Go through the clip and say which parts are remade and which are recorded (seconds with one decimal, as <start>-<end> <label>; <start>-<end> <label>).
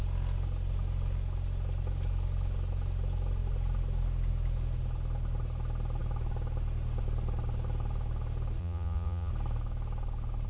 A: 0.0-8.6 recorded; 8.6-9.3 remade; 9.3-10.5 recorded